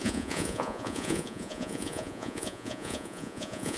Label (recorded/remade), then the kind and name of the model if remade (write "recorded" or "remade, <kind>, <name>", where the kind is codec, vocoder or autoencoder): remade, vocoder, Vocos